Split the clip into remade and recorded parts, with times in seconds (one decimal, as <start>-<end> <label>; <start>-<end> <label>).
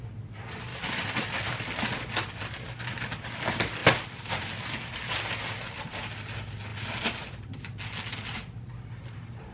0.0-0.7 recorded; 0.7-3.4 remade; 3.4-3.8 recorded; 3.8-4.4 remade; 4.4-9.5 recorded